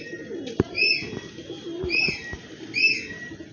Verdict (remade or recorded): recorded